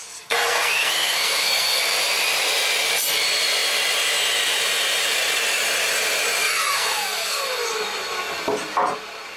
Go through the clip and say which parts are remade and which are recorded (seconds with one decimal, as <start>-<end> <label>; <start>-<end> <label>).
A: 0.0-1.8 remade; 1.8-6.4 recorded; 6.4-7.4 remade; 7.4-9.4 recorded